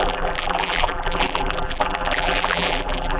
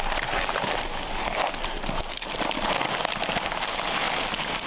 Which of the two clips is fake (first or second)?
first